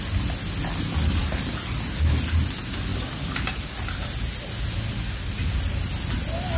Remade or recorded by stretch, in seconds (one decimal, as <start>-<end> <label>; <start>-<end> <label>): 0.0-6.6 recorded